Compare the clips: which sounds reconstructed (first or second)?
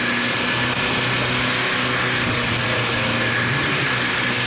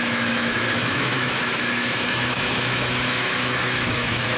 second